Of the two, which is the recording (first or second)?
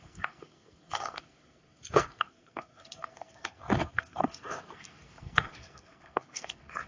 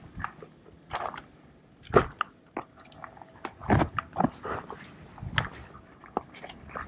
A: second